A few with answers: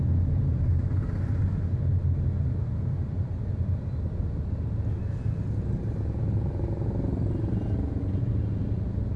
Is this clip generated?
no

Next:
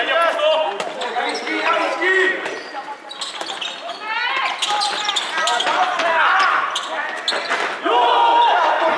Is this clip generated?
no